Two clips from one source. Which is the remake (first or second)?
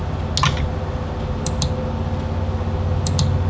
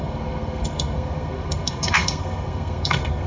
second